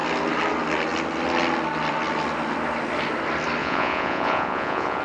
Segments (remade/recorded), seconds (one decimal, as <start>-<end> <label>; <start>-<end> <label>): 0.0-3.6 recorded; 3.6-5.0 remade